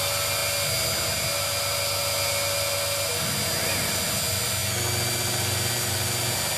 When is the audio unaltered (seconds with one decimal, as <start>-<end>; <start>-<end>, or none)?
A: 0.0-6.6